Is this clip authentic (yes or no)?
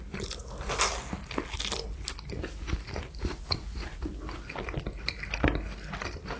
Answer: yes